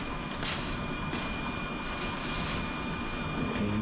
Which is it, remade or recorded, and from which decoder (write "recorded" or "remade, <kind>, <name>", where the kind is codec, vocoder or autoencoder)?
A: recorded